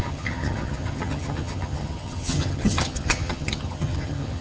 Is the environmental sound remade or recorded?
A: remade